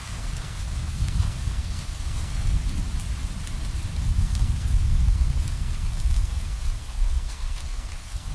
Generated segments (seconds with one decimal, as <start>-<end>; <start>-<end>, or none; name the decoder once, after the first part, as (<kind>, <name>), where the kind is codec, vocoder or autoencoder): 0.0-2.6 (codec, SNAC); 4.0-8.3